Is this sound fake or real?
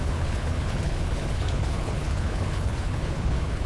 fake